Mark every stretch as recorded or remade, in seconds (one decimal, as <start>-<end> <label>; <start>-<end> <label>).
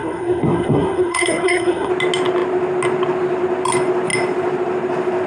0.0-1.9 remade; 1.9-5.3 recorded